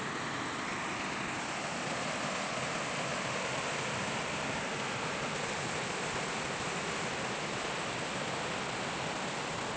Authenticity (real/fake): real